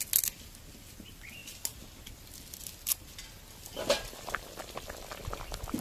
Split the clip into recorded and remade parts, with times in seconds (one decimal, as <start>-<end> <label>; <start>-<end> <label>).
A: 0.0-5.8 recorded